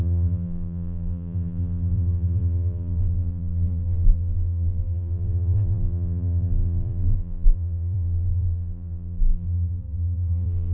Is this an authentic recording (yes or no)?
no